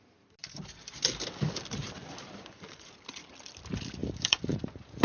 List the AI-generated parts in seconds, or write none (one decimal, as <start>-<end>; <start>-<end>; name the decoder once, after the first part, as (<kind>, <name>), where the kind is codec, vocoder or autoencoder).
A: 0.4-2.9 (vocoder, BigVGAN v2); 4.0-5.0